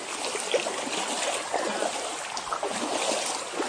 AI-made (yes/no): no